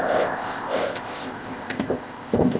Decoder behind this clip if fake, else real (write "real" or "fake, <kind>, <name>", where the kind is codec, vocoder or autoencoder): fake, codec, ZipCodec